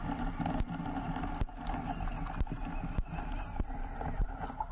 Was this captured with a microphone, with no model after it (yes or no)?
yes